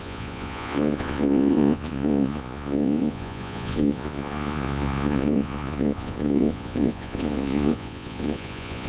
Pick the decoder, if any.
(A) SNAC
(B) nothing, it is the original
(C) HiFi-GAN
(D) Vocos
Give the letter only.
D